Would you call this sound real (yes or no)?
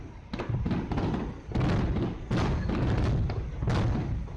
yes